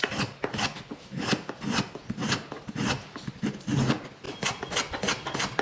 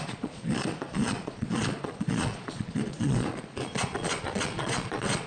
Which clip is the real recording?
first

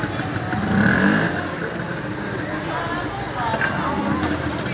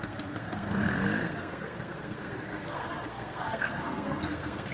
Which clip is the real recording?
first